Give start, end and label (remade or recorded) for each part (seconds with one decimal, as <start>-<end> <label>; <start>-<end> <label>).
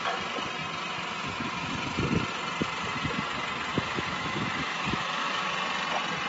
0.0-3.7 recorded; 3.7-5.5 remade; 5.5-6.3 recorded